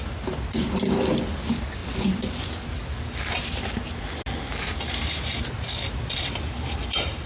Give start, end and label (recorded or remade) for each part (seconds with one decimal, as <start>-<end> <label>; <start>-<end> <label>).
0.0-7.3 recorded